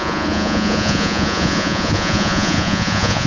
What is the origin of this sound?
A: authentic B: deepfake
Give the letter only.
B